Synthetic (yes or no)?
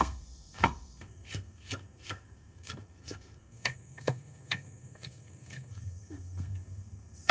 yes